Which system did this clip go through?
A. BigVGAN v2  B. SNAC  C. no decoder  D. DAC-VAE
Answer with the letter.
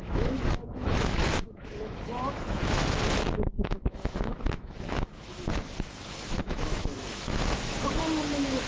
D